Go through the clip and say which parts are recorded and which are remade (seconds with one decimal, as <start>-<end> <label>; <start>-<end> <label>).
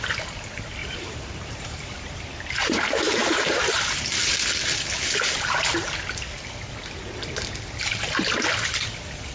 0.0-0.8 recorded; 0.8-4.3 remade; 4.3-9.3 recorded